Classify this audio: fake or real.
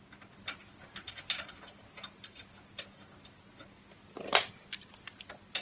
real